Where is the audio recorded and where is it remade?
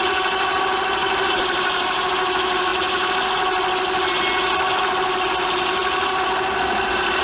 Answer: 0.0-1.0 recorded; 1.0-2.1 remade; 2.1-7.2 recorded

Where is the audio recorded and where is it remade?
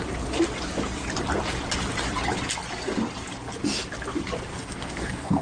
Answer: 0.0-4.5 recorded; 4.5-5.4 remade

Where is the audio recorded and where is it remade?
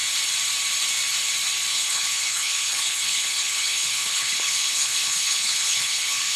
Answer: 0.0-1.7 recorded; 1.7-6.4 remade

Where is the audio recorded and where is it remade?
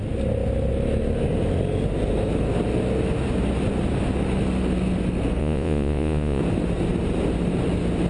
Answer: 0.0-5.4 recorded; 5.4-6.4 remade; 6.4-8.1 recorded